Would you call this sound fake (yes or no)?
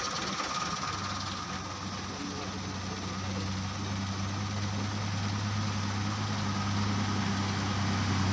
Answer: no